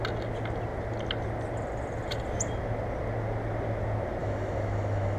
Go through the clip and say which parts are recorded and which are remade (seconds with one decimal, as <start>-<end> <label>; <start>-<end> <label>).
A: 0.0-4.2 recorded; 4.2-5.2 remade